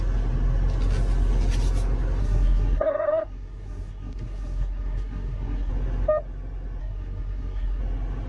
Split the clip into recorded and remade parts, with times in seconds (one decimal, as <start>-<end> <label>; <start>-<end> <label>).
0.0-2.2 recorded; 2.2-5.7 remade; 5.7-6.8 recorded; 6.8-7.8 remade; 7.8-8.3 recorded